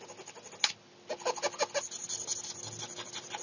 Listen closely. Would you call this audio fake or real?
real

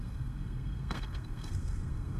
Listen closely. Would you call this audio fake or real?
fake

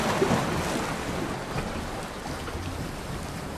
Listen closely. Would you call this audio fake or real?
real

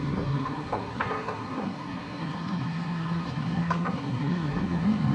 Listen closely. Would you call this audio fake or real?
fake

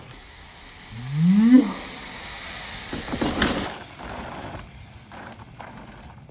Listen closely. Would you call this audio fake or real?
real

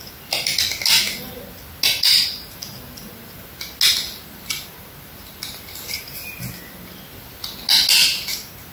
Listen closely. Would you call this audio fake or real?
real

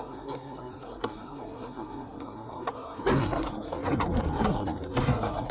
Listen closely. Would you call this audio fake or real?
fake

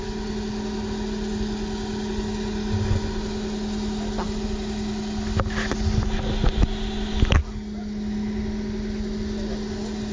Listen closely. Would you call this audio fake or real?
real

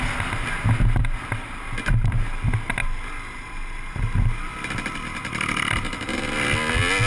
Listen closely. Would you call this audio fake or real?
real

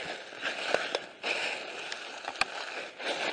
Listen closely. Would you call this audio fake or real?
real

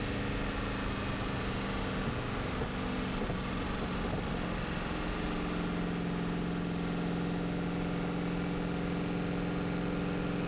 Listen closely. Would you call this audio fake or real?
real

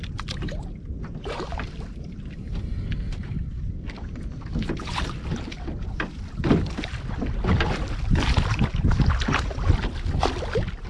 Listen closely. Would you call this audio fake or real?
real